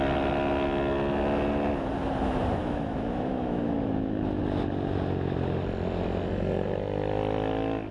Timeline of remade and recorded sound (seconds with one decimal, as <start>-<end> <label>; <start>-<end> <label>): 0.0-2.6 recorded; 2.6-4.4 remade; 4.4-7.9 recorded